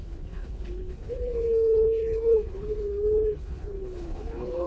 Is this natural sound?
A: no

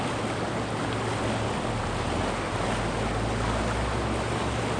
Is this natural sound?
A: yes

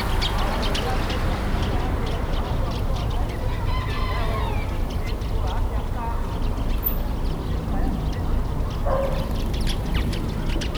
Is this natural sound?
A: yes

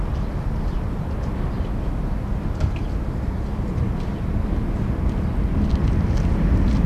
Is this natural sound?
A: yes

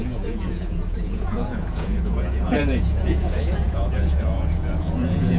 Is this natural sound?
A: no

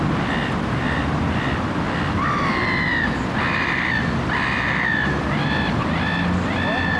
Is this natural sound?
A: yes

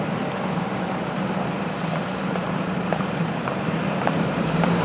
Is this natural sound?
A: no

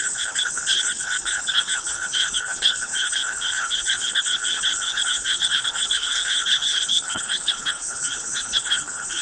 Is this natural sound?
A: no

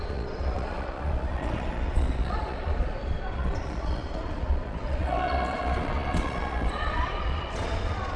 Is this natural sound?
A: no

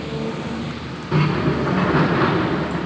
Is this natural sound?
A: yes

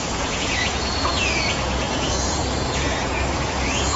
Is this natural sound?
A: no